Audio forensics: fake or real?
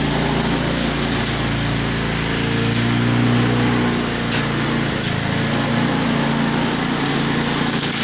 real